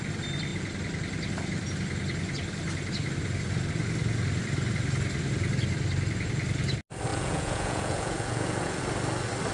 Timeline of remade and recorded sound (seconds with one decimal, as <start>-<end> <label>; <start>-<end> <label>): 0.0-7.1 recorded; 7.1-8.8 remade; 8.8-9.5 recorded